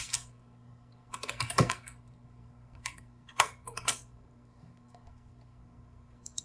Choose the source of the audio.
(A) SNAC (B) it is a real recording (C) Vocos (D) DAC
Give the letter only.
A